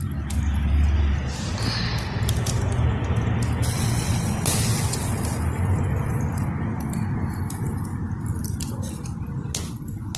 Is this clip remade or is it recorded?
recorded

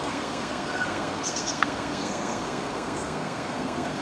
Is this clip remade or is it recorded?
remade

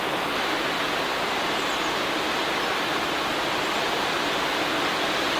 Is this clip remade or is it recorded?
recorded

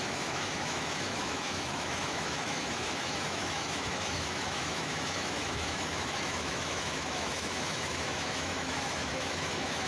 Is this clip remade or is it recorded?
remade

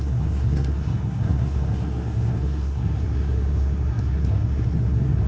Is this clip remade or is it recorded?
remade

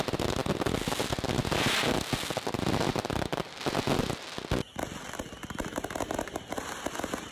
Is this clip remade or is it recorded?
recorded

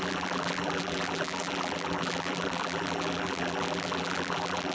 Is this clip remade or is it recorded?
remade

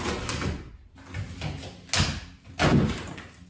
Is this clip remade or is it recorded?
recorded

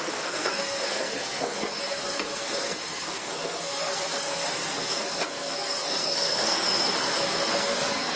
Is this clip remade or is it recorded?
remade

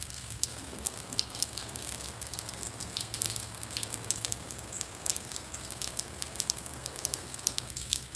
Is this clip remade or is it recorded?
remade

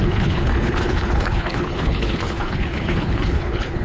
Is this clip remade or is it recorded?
remade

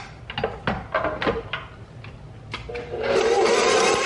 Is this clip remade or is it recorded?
recorded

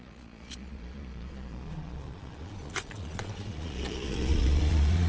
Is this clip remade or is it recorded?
remade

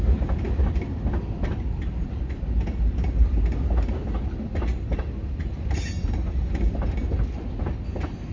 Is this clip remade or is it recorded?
recorded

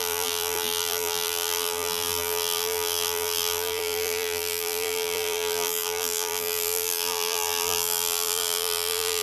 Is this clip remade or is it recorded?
remade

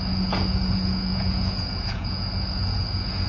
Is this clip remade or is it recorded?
remade